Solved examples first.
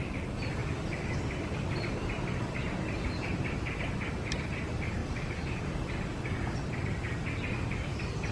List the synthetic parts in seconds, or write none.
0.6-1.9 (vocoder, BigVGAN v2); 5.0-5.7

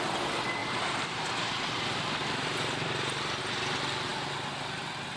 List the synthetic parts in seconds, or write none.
0.6-3.4 (vocoder, BigVGAN v2)

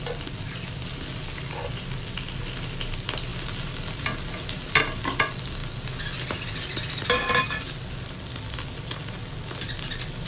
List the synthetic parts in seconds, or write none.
none